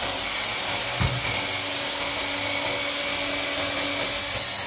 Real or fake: real